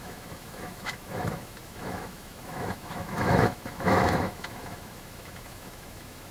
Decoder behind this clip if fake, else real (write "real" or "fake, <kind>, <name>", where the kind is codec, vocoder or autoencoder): fake, autoencoder, DAC-VAE